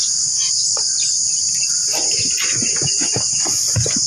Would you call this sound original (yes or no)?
yes